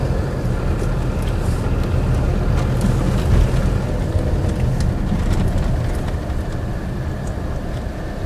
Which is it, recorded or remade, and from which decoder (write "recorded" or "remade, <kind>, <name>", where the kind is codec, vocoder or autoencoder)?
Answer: recorded